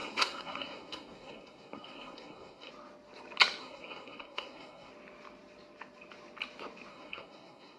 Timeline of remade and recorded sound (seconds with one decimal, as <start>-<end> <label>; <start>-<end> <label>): 0.0-2.7 remade; 2.7-3.6 recorded; 3.6-4.9 remade; 4.9-6.9 recorded; 6.9-7.8 remade